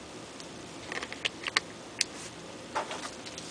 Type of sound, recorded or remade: recorded